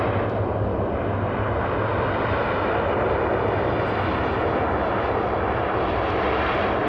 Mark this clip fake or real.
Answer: real